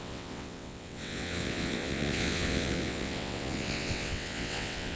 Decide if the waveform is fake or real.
fake